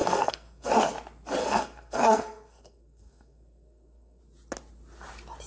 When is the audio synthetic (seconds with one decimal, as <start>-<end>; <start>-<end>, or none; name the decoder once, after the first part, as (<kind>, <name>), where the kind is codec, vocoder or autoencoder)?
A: 0.0-0.7 (codec, SNAC); 1.4-4.2